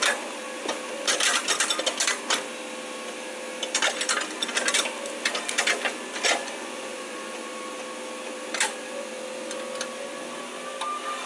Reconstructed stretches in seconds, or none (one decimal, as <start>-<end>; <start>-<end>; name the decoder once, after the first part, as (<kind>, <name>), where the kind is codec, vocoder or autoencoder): 6.4-7.5 (vocoder, Vocos)